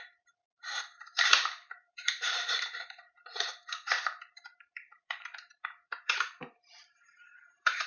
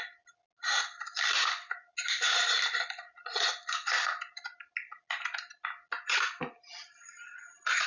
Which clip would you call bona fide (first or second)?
second